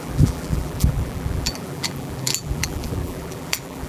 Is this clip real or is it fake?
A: fake